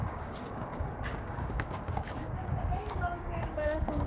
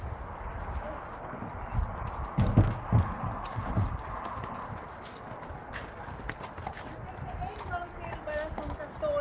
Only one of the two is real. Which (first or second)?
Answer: second